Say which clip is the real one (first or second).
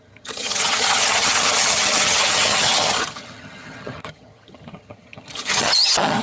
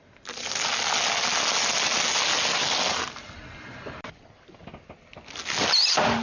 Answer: second